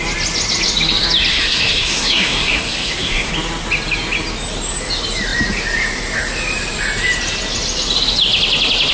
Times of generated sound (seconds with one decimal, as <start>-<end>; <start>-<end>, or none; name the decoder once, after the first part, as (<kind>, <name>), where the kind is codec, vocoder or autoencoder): 1.3-3.3 (codec, SNAC)